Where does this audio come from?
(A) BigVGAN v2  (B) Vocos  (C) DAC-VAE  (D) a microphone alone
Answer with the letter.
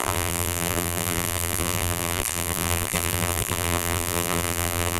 A